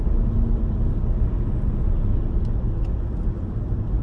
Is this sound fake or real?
real